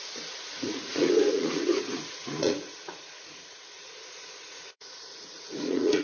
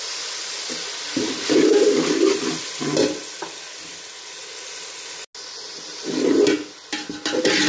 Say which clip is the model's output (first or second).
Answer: first